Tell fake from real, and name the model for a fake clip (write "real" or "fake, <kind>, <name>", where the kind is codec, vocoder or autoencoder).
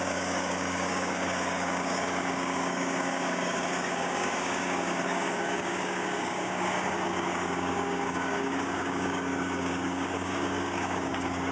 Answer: fake, codec, DAC